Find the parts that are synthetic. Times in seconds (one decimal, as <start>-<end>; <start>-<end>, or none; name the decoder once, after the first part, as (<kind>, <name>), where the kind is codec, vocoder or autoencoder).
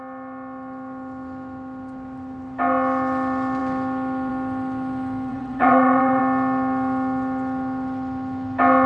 5.3-6.2 (vocoder, WaveNeXt)